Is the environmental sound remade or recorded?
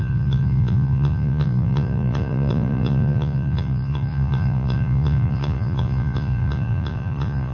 remade